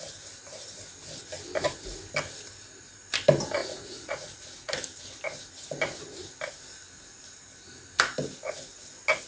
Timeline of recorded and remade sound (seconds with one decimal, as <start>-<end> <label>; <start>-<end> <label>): 0.0-3.6 recorded; 3.6-4.7 remade; 4.7-9.3 recorded

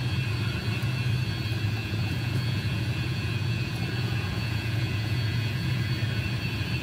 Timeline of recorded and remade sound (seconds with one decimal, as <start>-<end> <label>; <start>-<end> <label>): 0.0-1.8 recorded; 1.8-5.9 remade; 5.9-6.8 recorded

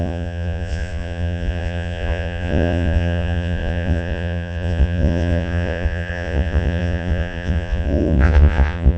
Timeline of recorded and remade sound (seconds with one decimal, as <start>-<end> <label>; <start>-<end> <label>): 0.0-9.0 remade

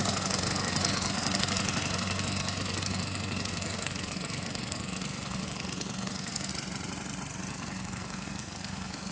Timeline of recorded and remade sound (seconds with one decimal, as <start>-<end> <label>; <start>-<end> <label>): 0.0-6.5 remade; 6.5-7.5 recorded; 7.5-9.1 remade

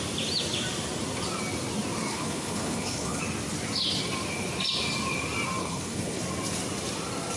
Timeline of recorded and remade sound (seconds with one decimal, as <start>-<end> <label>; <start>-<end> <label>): 0.0-2.1 recorded; 2.1-3.2 remade; 3.2-5.6 recorded; 5.6-6.2 remade; 6.2-7.4 recorded

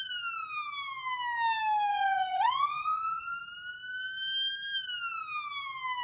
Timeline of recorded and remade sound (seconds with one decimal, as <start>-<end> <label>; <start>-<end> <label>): 0.0-1.9 recorded; 1.9-3.3 remade; 3.3-6.0 recorded

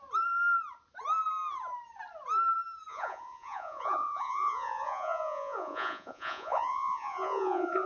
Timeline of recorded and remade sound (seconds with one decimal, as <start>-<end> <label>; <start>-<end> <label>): 0.0-2.9 recorded; 2.9-7.9 remade

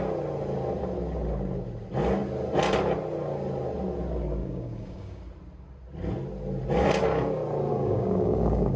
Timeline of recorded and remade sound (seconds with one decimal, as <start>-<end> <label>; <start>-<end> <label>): 0.0-4.4 recorded; 4.4-5.2 remade; 5.2-7.7 recorded; 7.7-8.8 remade